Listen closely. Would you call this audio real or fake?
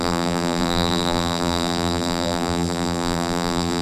fake